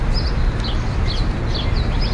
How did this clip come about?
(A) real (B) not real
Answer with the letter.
A